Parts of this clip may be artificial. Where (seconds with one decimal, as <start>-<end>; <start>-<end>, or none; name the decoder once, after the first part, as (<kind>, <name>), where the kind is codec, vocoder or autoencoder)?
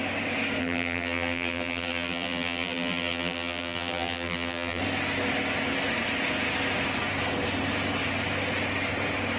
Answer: 0.6-4.8 (vocoder, BigVGAN v2)